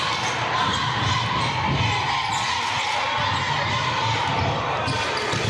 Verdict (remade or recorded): recorded